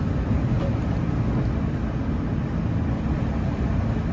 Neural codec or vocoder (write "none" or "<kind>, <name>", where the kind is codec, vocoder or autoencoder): none